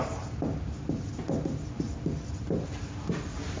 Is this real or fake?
real